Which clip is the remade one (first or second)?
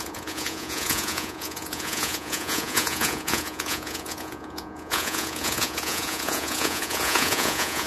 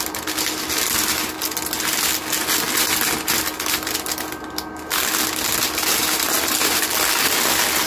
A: first